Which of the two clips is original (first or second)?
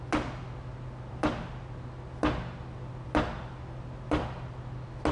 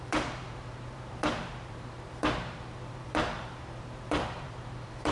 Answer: first